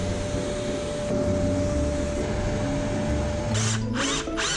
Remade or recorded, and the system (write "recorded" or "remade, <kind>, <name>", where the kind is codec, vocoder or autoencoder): recorded